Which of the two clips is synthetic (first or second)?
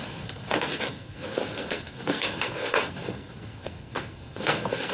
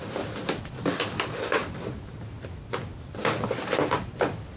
first